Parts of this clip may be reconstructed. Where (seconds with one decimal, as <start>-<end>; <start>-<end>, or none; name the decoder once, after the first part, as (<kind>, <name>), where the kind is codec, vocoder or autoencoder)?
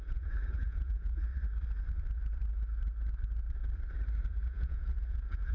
0.0-1.3 (vocoder, Vocos); 4.2-5.5